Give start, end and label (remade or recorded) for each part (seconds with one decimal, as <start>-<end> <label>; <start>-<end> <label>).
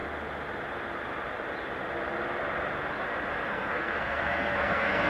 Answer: 0.0-3.5 recorded; 3.5-5.1 remade